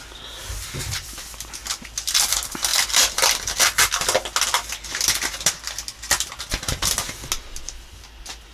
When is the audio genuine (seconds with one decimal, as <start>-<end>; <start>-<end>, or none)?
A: 0.0-8.5